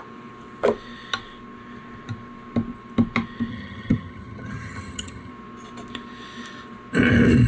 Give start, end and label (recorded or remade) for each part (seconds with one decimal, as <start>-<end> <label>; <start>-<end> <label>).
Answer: 0.0-3.5 recorded; 3.5-5.3 remade; 5.3-7.5 recorded